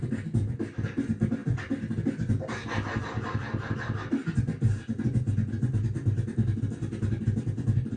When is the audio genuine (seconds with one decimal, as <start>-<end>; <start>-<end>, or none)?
0.0-8.0